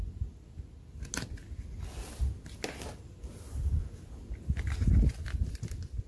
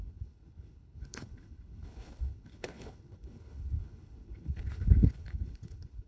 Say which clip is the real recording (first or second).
first